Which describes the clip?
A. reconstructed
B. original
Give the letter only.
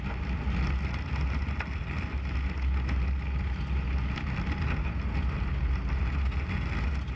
B